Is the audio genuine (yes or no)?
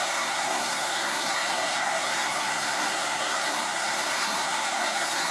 no